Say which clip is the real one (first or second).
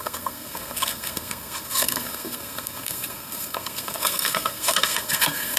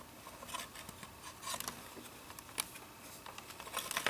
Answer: second